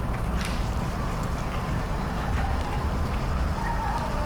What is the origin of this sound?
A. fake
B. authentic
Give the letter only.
A